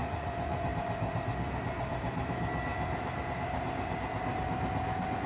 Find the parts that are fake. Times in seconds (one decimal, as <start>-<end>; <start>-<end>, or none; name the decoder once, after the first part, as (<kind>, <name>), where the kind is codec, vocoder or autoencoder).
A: 0.0-0.7 (vocoder, Vocos)